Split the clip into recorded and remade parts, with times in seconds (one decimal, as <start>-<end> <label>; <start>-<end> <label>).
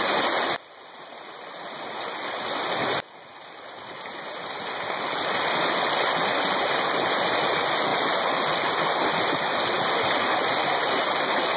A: 0.0-11.6 recorded